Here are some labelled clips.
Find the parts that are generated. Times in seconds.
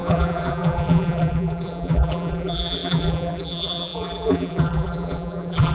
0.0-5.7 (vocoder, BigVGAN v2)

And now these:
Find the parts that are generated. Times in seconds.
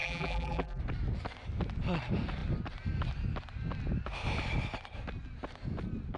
0.0-0.8 (vocoder, BigVGAN v2)